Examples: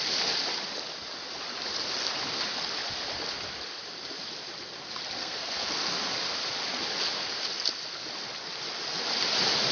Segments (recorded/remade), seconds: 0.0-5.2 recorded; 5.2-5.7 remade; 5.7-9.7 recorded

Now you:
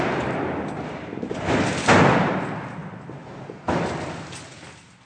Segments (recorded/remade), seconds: 0.0-5.1 recorded

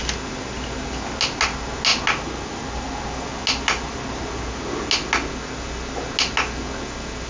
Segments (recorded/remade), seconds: 0.0-7.3 recorded